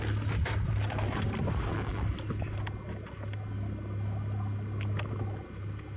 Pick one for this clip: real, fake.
real